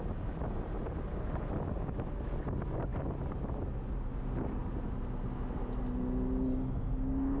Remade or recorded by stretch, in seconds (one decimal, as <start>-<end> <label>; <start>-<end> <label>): 0.0-7.4 recorded